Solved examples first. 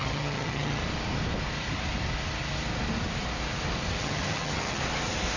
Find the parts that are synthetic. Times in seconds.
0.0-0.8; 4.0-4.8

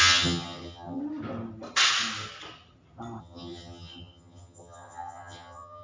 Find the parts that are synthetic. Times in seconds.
0.0-1.0; 3.2-5.8

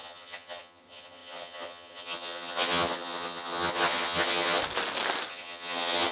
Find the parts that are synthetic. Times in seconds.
0.0-4.6; 5.3-6.1

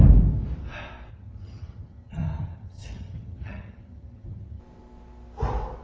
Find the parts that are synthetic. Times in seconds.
1.1-4.6

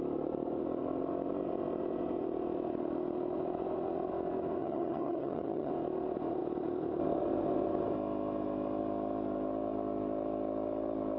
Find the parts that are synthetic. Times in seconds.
4.6-5.7

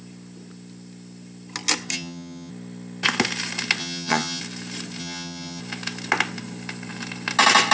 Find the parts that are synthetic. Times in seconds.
1.9-2.5; 3.8-4.4; 5.0-5.6